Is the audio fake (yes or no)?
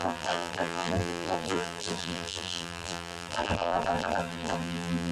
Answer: yes